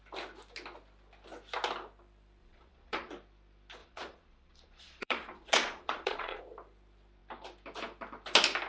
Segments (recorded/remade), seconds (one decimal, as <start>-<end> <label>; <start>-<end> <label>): 0.0-2.4 recorded; 2.4-3.1 remade; 3.1-3.8 recorded; 3.8-6.4 remade; 6.4-8.7 recorded